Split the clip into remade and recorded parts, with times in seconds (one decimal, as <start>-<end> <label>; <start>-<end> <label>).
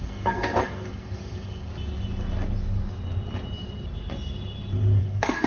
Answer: 0.0-1.7 remade; 1.7-5.0 recorded; 5.0-5.5 remade